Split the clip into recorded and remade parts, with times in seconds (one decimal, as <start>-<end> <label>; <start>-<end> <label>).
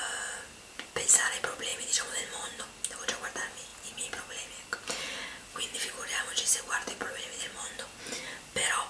0.0-1.7 recorded; 1.7-2.6 remade; 2.6-8.9 recorded